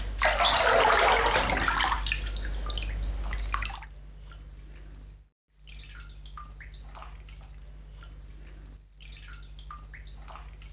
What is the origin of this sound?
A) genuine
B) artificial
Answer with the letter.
A